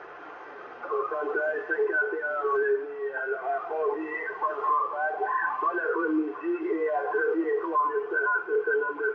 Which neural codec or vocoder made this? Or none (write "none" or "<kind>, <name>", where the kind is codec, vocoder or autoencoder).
vocoder, BigVGAN v2